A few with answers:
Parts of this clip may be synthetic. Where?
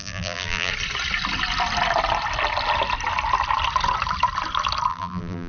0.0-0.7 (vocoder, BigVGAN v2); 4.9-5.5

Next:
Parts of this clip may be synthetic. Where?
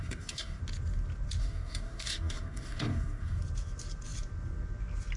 0.0-0.6 (codec, DAC); 1.4-3.4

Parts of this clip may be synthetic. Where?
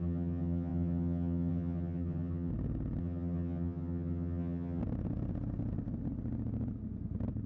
0.0-2.5 (vocoder, HiFi-GAN); 3.0-4.8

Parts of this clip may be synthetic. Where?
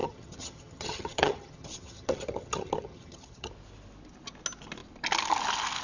0.0-3.5 (vocoder, HiFi-GAN)